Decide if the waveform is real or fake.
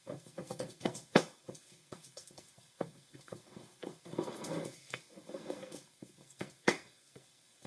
fake